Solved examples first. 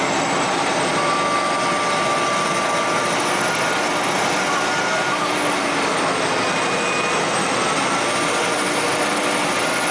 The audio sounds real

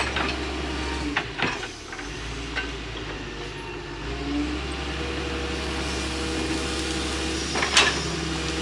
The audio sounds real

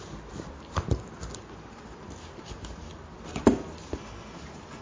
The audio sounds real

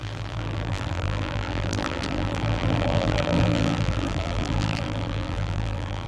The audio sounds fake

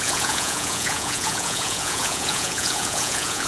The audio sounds fake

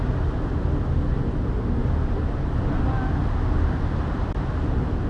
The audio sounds real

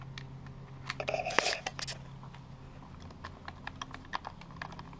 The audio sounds real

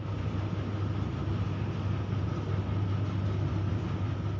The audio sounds fake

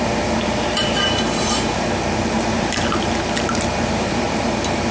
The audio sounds fake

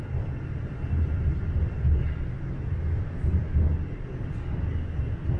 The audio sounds real